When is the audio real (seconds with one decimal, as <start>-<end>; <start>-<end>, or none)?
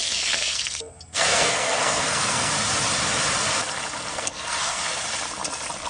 2.5-4.1; 4.8-5.9